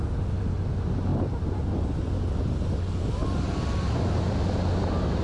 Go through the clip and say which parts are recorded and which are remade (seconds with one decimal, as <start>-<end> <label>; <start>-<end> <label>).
0.0-5.2 recorded